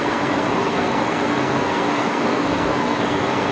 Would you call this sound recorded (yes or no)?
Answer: no